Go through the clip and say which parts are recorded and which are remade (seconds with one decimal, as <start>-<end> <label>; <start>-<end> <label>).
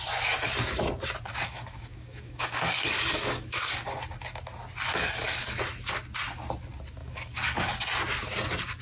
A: 0.0-1.3 recorded; 1.3-4.0 remade; 4.0-4.9 recorded; 4.9-5.6 remade; 5.6-7.0 recorded; 7.0-7.7 remade; 7.7-8.8 recorded